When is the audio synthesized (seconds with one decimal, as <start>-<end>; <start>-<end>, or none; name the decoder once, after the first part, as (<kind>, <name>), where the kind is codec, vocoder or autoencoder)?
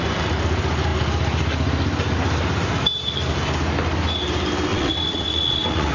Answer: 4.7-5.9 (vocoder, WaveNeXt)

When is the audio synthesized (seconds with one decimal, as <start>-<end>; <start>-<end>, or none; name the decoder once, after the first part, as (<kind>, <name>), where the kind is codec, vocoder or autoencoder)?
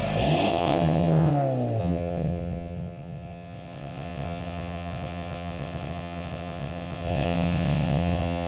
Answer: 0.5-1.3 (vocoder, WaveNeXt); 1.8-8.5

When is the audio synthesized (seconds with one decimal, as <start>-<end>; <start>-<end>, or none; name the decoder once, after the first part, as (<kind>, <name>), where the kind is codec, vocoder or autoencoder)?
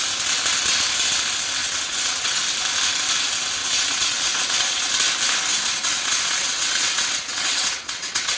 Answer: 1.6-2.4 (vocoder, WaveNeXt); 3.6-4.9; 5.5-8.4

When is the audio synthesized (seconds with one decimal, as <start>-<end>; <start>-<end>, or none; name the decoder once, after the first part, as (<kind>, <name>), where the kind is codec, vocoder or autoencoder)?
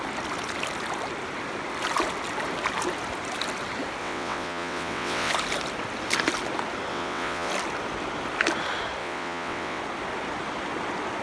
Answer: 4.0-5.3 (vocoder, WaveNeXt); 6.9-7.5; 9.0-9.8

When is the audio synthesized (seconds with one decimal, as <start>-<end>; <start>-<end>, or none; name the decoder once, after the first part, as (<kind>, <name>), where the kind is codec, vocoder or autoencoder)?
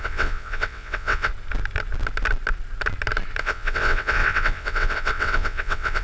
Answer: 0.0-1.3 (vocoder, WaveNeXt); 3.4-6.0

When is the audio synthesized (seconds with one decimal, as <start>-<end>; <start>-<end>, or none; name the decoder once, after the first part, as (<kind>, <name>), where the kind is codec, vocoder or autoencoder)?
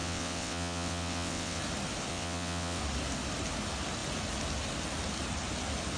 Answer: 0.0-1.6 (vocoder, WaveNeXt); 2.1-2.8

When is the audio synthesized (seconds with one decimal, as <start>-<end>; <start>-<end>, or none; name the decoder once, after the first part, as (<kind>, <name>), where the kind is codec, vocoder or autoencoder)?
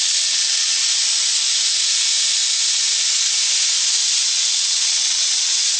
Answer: 0.0-0.8 (vocoder, WaveNeXt); 4.3-5.8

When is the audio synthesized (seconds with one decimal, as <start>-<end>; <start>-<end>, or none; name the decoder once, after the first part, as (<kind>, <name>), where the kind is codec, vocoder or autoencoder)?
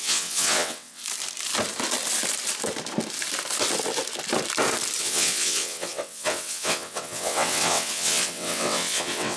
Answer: 0.0-1.0 (vocoder, WaveNeXt); 5.0-9.4